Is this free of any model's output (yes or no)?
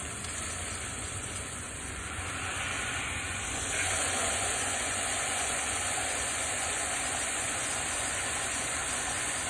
no